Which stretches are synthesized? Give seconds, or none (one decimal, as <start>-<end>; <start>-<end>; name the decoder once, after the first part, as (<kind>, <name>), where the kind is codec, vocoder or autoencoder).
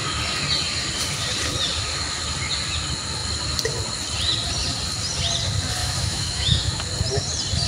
5.8-6.8 (autoencoder, DAC-VAE)